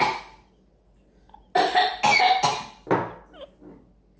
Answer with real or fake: real